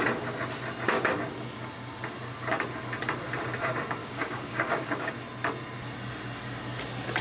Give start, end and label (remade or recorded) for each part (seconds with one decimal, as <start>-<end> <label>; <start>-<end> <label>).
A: 0.0-4.0 recorded; 4.0-5.1 remade; 5.1-7.2 recorded